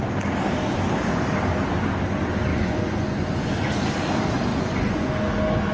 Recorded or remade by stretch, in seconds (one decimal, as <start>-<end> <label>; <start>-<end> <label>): 0.0-2.5 recorded; 2.5-3.7 remade; 3.7-4.5 recorded; 4.5-5.1 remade; 5.1-5.7 recorded